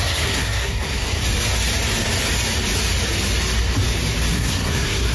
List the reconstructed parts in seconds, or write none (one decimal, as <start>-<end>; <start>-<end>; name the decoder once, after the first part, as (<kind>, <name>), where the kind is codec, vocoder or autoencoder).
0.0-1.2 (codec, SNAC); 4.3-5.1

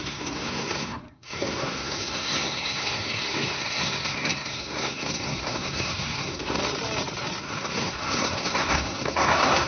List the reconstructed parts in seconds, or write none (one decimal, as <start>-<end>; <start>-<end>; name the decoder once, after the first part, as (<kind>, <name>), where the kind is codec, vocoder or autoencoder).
0.0-6.6 (codec, SNAC); 7.4-9.7

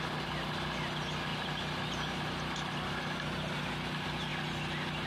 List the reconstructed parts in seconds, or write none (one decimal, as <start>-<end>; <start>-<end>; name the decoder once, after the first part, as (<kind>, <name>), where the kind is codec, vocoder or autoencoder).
none

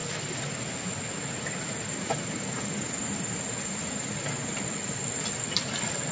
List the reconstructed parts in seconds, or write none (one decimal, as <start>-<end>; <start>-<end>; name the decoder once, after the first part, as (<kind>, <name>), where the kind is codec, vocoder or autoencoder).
none

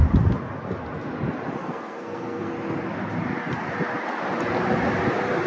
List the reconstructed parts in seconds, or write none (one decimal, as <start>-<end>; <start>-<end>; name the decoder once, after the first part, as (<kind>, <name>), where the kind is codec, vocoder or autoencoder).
1.6-2.5 (codec, SNAC)

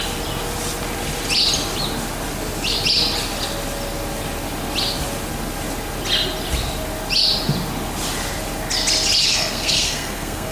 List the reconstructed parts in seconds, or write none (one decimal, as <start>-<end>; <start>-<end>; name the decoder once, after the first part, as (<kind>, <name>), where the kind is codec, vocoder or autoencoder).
9.3-10.5 (codec, SNAC)

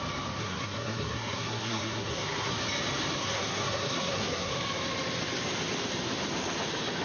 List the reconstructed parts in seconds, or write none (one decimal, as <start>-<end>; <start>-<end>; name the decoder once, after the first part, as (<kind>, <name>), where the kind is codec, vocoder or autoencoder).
0.4-2.5 (codec, SNAC); 3.2-4.5